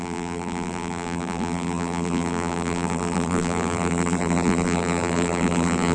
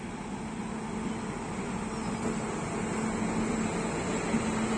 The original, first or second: second